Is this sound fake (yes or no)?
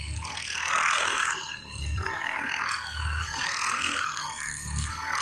yes